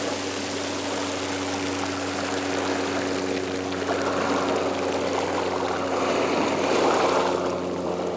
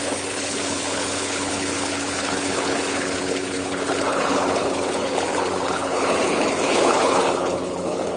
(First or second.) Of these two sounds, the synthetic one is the second